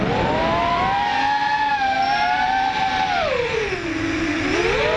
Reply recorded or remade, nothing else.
recorded